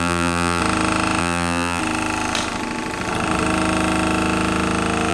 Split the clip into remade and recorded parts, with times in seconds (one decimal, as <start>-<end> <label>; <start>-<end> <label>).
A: 0.0-0.6 remade; 0.6-1.2 recorded; 1.2-1.8 remade; 1.8-5.1 recorded

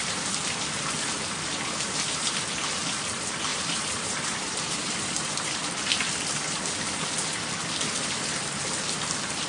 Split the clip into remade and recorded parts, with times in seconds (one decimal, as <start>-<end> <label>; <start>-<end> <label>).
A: 0.0-3.5 recorded; 3.5-5.3 remade; 5.3-9.5 recorded

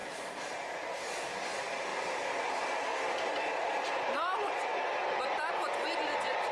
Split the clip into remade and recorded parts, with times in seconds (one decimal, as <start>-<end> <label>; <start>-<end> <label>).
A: 0.0-1.0 remade; 1.0-6.5 recorded

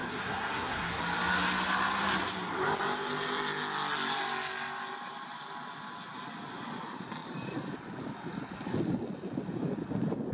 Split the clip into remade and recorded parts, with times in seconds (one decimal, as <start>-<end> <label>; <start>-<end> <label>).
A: 0.0-1.0 remade; 1.0-10.3 recorded

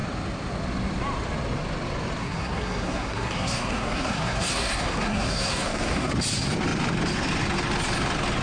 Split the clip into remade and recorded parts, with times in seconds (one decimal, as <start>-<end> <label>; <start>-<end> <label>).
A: 0.0-2.2 recorded; 2.2-6.1 remade; 6.1-8.4 recorded

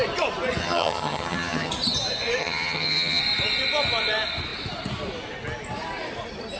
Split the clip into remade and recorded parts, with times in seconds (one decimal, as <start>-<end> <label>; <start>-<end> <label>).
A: 0.0-0.6 recorded; 0.6-1.7 remade; 1.7-2.4 recorded; 2.4-3.2 remade; 3.2-6.6 recorded